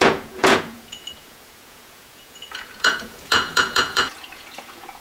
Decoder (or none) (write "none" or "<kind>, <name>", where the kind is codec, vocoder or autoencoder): vocoder, Vocos